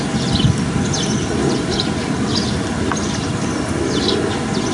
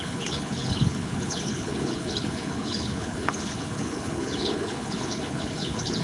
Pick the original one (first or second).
first